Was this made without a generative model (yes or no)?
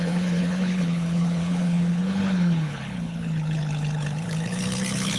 no